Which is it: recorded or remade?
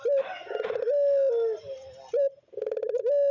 recorded